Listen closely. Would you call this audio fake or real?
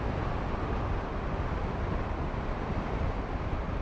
real